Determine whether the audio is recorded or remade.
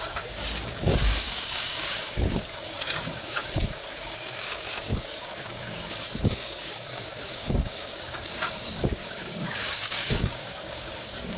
remade